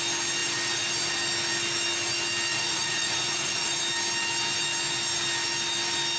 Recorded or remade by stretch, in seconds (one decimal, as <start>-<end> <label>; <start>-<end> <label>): 0.0-2.5 recorded; 2.5-3.8 remade; 3.8-6.2 recorded